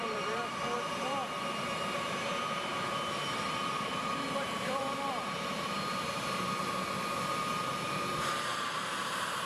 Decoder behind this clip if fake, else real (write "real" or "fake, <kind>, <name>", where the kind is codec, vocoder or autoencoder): fake, vocoder, BigVGAN v2